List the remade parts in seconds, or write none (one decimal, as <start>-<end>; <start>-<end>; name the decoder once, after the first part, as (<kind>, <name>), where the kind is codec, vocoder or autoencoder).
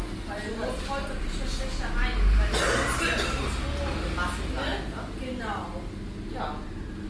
none